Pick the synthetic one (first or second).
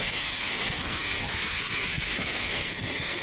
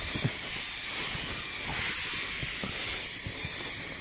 first